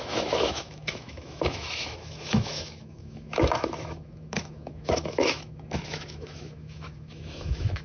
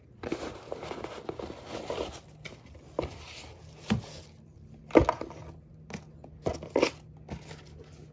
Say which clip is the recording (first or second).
second